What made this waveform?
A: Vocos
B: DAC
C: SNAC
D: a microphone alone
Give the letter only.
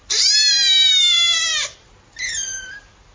D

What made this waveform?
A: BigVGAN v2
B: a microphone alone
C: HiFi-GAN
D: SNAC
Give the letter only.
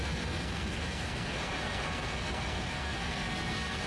D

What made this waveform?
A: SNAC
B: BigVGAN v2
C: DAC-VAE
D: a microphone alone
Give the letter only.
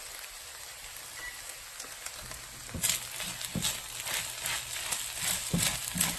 D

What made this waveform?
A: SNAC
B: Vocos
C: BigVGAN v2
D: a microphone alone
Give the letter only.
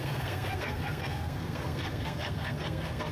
A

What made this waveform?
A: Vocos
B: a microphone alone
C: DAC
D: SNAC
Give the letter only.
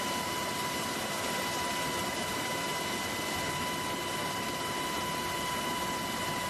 B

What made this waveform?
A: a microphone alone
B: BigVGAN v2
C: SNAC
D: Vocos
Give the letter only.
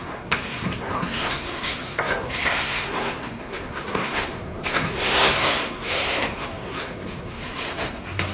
C